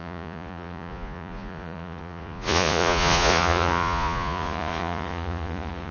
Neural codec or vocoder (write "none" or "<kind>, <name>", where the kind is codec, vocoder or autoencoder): vocoder, Vocos